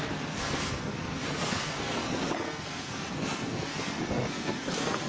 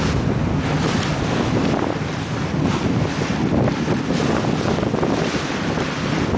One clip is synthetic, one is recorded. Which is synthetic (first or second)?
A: first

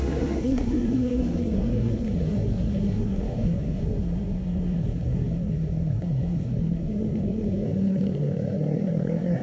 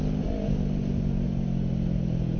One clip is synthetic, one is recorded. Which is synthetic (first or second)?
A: first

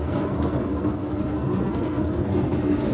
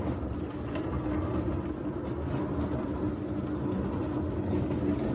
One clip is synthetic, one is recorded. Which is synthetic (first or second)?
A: first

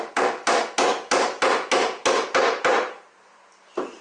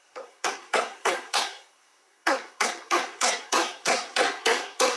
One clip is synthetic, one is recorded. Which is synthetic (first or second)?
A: second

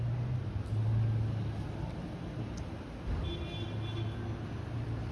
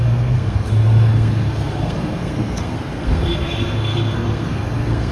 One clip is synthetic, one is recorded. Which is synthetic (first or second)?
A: second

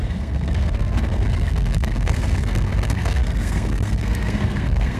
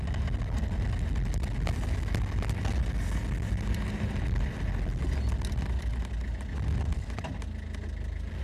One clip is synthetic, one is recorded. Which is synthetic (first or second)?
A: first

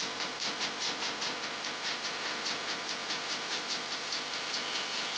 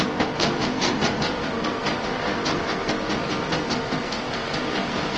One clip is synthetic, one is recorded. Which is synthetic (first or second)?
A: second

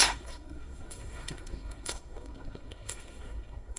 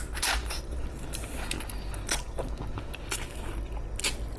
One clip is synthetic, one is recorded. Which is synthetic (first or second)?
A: first